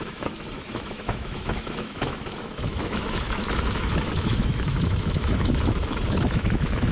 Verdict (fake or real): fake